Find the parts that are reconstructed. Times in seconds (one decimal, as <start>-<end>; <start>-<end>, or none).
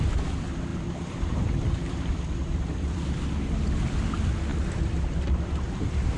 0.0-6.2